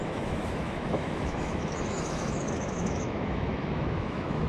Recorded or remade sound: remade